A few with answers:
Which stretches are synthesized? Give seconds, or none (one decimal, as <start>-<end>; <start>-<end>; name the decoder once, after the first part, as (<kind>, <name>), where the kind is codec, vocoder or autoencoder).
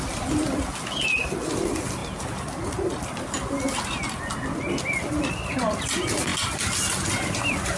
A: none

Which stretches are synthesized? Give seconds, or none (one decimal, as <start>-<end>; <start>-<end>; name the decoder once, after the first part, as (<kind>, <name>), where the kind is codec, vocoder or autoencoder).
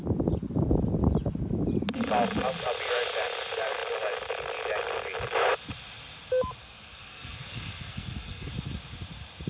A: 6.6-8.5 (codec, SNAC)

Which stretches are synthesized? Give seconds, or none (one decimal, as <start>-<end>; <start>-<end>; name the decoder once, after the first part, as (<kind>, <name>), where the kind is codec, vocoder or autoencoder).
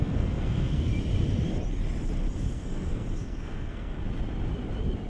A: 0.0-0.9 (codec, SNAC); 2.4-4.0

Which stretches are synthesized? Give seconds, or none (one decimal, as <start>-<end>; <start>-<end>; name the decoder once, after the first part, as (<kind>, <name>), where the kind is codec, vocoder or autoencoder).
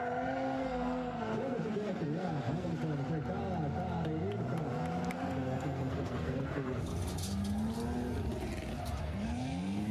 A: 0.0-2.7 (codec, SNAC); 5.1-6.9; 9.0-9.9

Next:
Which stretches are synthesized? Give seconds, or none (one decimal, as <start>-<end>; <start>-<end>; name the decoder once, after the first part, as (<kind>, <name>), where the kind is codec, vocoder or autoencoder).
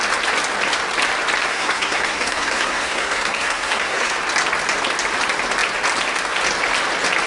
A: 1.5-4.1 (codec, SNAC)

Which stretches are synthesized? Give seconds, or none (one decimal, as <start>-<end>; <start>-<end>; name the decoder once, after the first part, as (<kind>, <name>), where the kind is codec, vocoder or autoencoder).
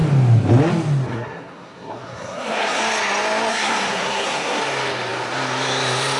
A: 1.1-2.8 (codec, SNAC); 3.5-4.6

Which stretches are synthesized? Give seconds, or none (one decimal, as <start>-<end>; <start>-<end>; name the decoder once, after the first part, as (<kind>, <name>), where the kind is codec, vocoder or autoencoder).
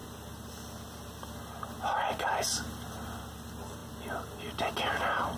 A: none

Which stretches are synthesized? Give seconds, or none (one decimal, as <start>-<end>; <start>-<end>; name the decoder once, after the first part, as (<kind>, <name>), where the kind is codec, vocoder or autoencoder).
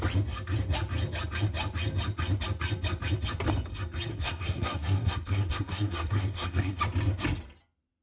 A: 4.1-6.8 (codec, SNAC)